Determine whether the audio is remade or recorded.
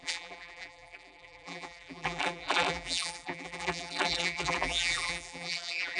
remade